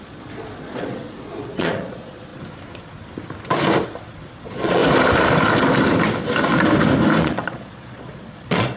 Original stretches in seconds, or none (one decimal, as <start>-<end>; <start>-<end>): 2.3-4.3; 4.8-7.2